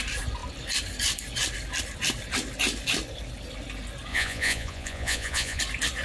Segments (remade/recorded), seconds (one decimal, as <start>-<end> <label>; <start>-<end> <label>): 0.0-4.1 recorded; 4.1-5.6 remade; 5.6-6.0 recorded